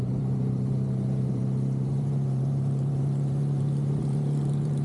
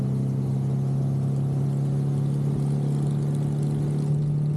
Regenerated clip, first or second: first